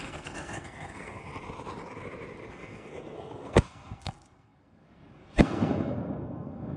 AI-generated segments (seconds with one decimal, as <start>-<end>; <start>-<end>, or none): 0.0-1.3; 2.5-6.8